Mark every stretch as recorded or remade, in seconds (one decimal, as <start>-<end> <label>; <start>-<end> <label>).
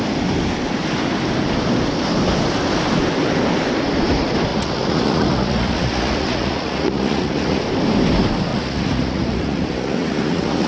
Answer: 0.0-4.5 recorded; 4.5-7.6 remade; 7.6-8.5 recorded; 8.5-10.7 remade